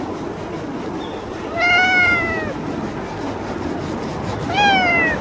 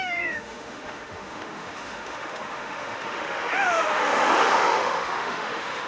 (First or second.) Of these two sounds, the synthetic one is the second